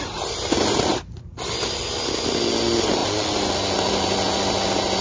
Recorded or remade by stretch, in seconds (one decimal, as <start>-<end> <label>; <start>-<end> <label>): 0.0-5.0 recorded